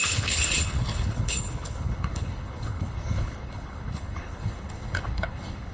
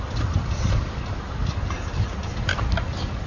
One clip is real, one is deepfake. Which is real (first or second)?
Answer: second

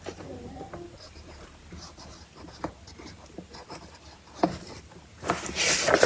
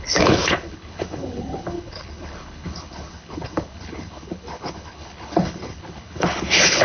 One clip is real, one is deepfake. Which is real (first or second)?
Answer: first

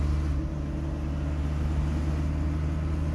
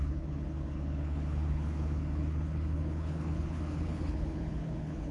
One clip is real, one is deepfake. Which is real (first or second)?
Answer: first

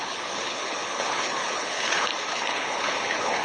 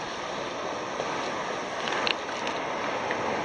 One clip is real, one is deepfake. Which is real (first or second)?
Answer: second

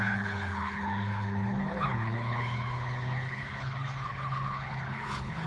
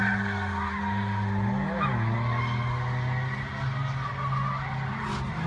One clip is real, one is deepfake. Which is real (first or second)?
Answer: second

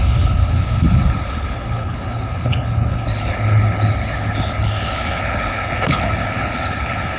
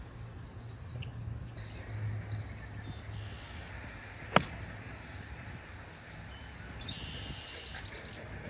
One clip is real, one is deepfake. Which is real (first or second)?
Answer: second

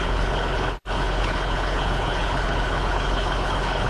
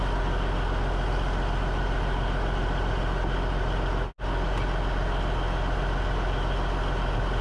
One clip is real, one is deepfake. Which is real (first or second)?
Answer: second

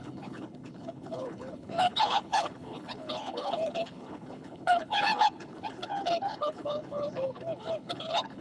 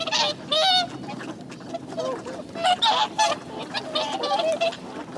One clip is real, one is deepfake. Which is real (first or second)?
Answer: second